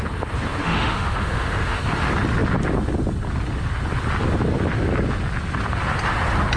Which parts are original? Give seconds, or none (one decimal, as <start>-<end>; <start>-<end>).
0.0-0.6; 1.8-6.6